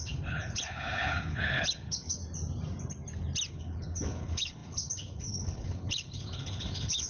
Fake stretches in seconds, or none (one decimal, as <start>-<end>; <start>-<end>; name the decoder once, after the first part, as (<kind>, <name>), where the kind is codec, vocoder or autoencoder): 0.0-2.2 (codec, HILCodec); 3.5-7.1